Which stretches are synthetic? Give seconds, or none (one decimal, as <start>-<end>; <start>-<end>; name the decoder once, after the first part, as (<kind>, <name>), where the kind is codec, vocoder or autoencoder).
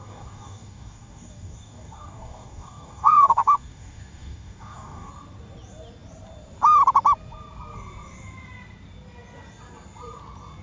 0.0-5.1 (codec, DAC)